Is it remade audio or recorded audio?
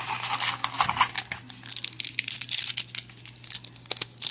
recorded